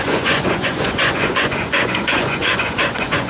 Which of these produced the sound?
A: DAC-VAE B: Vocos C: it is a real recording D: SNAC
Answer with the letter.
B